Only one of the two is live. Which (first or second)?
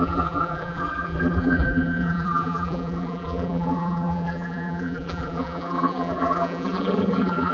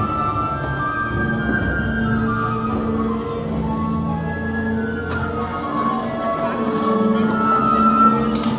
second